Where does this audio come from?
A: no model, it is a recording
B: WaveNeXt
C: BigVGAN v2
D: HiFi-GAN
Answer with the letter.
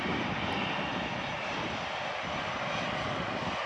A